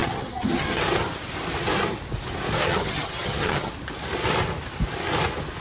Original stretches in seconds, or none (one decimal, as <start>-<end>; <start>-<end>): 0.8-2.6; 3.7-5.6